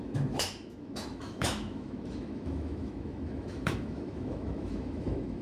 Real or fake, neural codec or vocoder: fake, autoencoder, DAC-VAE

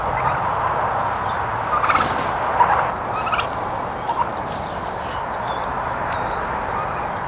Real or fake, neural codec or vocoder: real